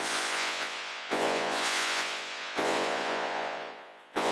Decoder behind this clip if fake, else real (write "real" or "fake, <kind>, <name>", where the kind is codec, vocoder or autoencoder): fake, vocoder, Vocos